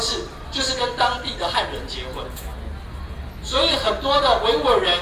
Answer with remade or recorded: recorded